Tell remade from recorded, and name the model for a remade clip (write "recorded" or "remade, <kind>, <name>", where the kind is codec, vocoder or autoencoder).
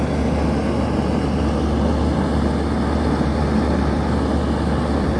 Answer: recorded